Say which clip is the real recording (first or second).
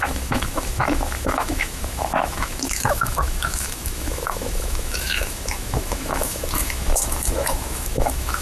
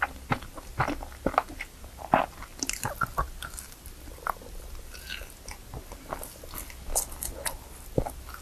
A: second